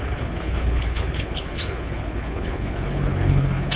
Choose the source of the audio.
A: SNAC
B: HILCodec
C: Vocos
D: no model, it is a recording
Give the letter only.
B